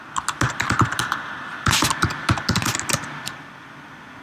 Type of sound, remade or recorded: recorded